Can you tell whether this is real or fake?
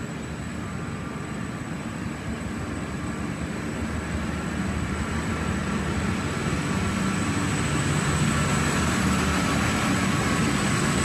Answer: real